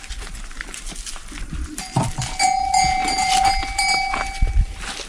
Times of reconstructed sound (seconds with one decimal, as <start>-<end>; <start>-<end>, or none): 3.0-3.5